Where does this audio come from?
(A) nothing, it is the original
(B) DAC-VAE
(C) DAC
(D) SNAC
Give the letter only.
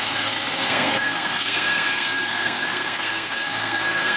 D